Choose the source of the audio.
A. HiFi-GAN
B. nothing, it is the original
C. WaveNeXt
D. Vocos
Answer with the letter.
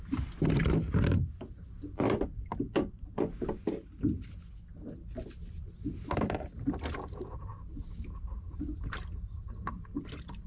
B